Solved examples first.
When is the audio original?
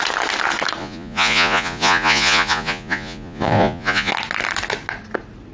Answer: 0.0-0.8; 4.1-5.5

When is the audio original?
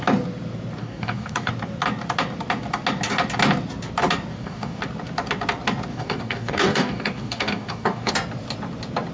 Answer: 0.0-0.8; 1.5-4.3; 4.8-5.9; 8.1-9.1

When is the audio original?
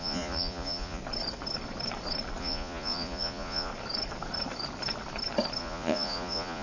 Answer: 1.0-2.4; 3.7-5.6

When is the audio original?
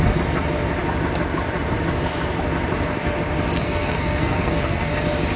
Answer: 0.0-3.6; 4.9-5.4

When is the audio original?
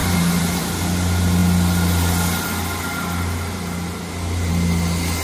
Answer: 0.6-5.2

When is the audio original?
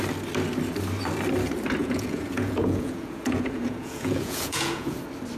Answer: 0.0-1.8; 5.0-5.4